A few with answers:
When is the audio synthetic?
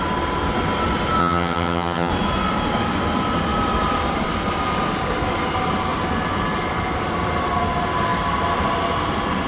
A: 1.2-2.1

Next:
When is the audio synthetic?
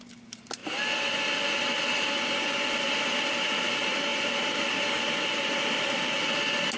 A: none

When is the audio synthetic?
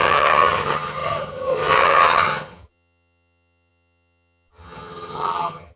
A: 0.0-5.8